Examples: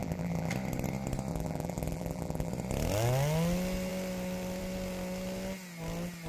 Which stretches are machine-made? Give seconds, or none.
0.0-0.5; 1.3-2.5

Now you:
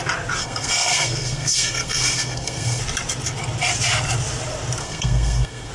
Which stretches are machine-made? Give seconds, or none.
0.4-2.8; 4.8-5.7

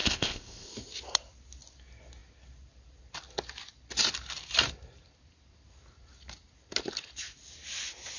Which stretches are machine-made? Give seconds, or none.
0.0-0.7

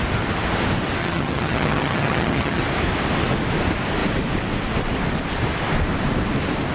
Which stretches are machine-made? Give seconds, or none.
1.0-2.6

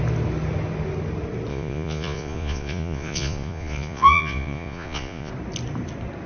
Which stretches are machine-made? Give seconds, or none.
1.5-5.3

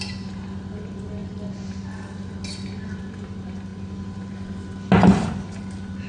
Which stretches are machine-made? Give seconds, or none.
none

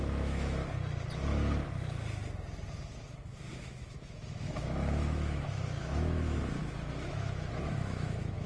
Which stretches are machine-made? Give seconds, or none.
0.0-0.6; 3.1-8.5